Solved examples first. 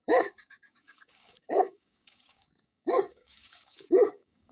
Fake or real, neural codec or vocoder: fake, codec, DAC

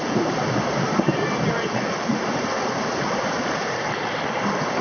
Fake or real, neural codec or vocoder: real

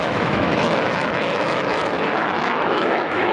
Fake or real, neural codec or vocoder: fake, autoencoder, DAC-VAE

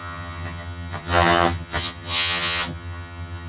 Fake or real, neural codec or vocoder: fake, vocoder, HiFi-GAN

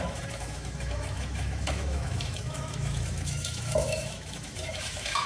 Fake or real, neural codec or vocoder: fake, autoencoder, DAC-VAE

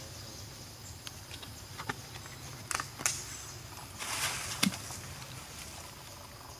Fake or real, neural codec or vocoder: real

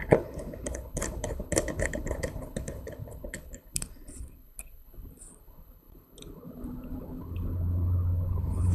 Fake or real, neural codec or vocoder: fake, codec, HILCodec